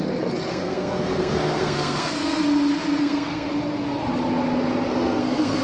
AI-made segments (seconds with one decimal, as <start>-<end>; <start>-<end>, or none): 0.5-2.4; 3.0-3.5; 4.9-5.6